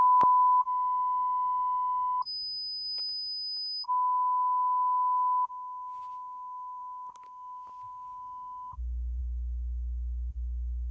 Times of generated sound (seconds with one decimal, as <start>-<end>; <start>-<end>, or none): none